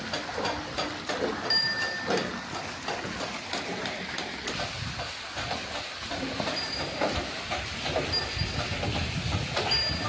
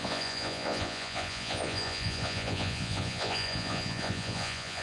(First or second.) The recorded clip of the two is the first